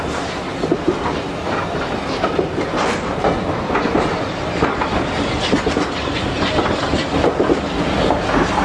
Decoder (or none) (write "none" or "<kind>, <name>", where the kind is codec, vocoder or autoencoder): none